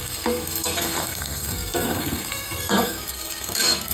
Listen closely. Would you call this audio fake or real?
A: fake